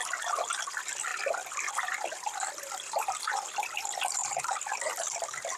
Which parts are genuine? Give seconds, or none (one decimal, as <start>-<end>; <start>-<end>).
0.0-5.6